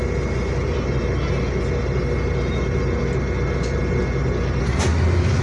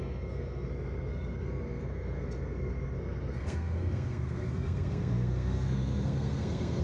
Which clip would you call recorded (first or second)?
first